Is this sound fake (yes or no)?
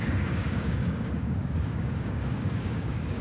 yes